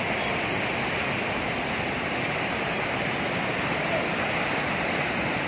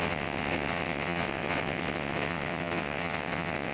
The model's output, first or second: second